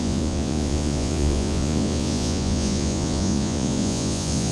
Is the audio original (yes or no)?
no